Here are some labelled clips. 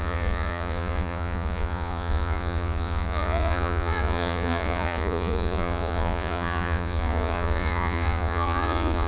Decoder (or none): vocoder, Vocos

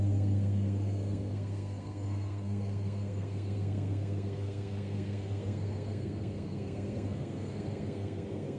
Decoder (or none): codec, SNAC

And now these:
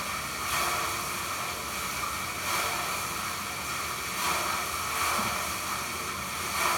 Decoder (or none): none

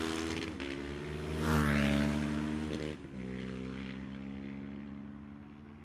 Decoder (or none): none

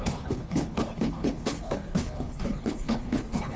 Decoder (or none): codec, HILCodec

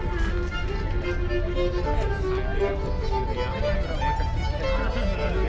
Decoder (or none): none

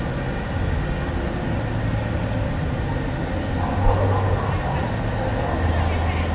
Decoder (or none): none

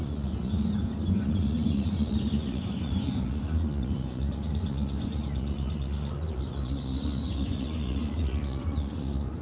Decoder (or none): vocoder, Vocos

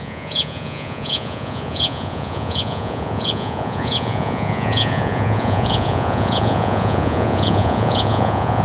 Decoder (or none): vocoder, Vocos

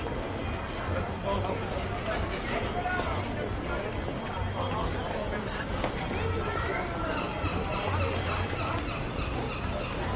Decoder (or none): none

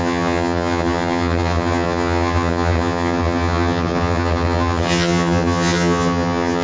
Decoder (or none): vocoder, HiFi-GAN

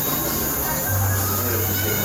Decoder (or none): none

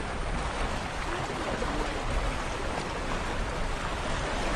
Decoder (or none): none